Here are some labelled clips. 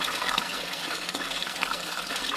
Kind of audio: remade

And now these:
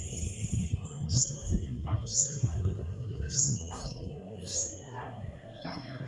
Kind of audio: remade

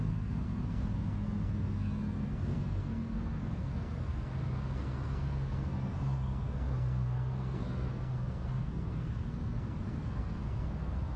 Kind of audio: remade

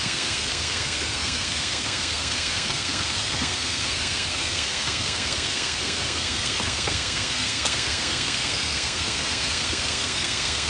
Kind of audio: remade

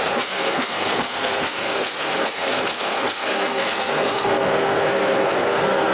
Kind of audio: remade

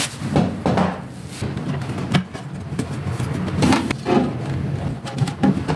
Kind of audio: recorded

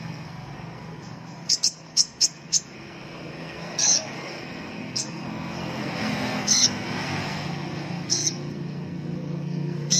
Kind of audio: remade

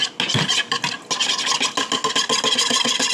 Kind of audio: recorded